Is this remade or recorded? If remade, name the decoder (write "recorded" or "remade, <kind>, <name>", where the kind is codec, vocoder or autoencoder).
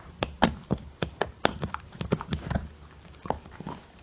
recorded